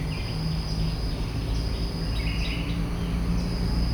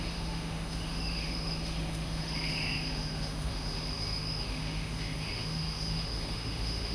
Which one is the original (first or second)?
first